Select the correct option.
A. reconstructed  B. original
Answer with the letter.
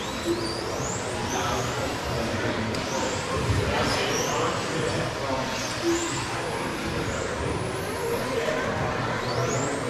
B